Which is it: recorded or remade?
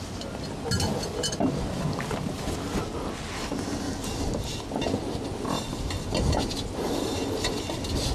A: recorded